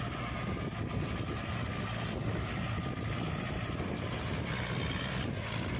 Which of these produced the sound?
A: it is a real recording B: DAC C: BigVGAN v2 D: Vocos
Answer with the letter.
A